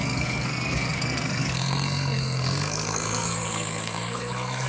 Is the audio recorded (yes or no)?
no